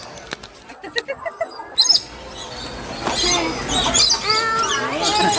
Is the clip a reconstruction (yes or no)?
no